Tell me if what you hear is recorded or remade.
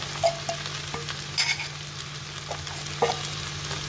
recorded